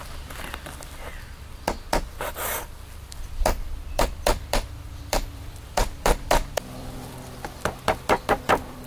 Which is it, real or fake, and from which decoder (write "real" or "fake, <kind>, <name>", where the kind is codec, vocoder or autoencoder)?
fake, vocoder, BigVGAN v2